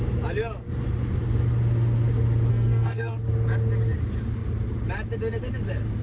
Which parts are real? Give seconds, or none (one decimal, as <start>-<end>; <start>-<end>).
0.0-2.5; 3.1-6.0